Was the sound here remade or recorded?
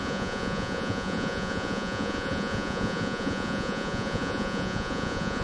remade